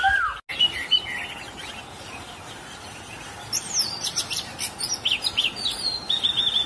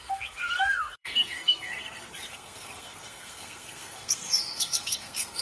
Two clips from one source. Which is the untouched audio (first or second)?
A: first